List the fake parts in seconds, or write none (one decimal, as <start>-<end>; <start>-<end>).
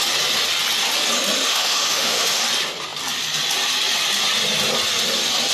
1.4-2.4